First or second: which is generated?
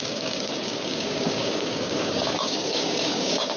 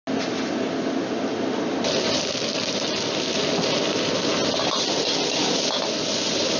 first